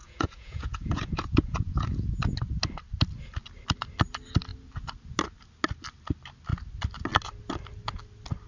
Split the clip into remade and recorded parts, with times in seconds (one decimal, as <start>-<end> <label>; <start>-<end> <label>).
0.0-2.1 remade; 2.1-8.5 recorded